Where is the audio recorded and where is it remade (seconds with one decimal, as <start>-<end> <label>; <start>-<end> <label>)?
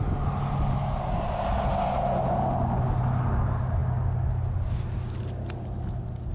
0.0-6.3 recorded